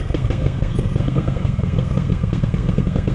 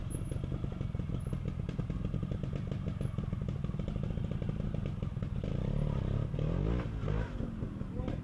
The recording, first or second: second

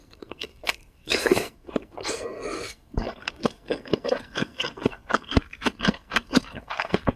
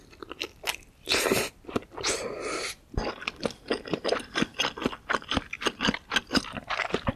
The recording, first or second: second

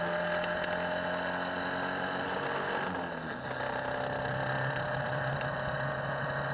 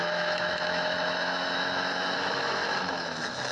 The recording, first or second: first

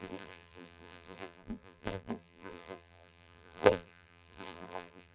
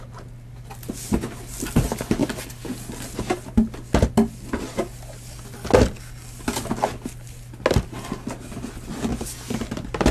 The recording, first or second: second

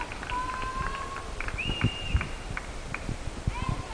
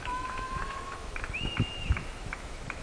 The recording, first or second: first